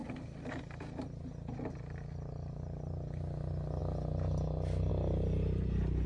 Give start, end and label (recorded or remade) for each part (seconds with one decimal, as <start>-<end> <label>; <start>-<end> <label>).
0.0-6.1 recorded